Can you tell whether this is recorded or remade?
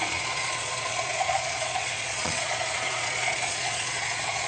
remade